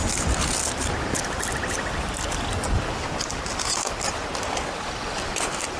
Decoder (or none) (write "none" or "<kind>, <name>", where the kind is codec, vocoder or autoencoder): none